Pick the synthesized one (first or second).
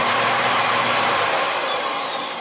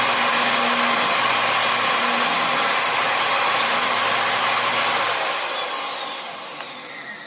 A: first